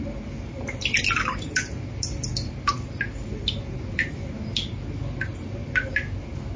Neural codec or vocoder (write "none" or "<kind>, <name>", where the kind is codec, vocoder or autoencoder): none